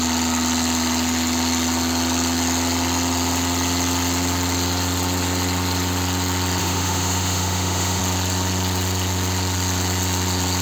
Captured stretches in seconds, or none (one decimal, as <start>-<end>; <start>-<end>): 0.0-6.6; 8.0-10.6